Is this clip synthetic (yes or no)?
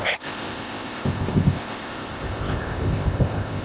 yes